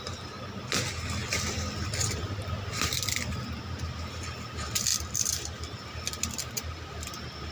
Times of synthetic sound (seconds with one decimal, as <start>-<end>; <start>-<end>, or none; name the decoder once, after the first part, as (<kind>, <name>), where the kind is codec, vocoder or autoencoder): 1.2-3.3 (vocoder, BigVGAN v2)